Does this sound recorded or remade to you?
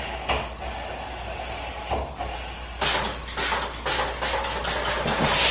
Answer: recorded